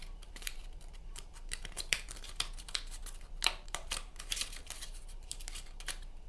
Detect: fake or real fake